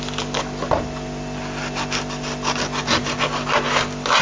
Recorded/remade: recorded